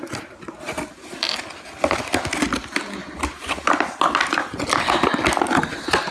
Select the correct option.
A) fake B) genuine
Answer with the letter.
B